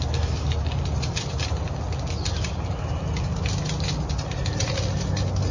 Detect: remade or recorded recorded